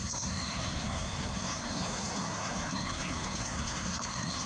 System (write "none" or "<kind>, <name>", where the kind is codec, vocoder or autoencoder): codec, SNAC